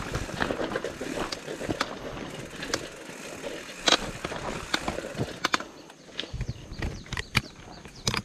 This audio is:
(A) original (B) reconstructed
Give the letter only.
A